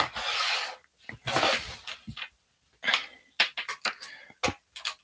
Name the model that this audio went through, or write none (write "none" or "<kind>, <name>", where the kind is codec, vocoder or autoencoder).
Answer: none